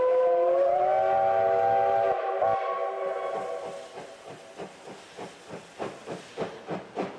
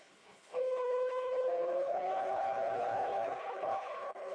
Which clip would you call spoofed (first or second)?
second